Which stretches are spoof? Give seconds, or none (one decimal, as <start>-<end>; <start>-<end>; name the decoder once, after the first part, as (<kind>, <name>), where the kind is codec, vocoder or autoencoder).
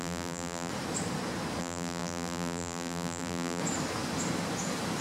0.0-0.7 (vocoder, BigVGAN v2); 1.6-3.6